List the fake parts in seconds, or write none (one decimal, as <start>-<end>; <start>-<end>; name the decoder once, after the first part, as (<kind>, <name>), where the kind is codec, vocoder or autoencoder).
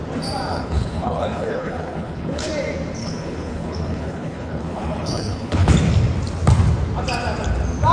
0.5-2.5 (codec, HILCodec); 3.0-5.7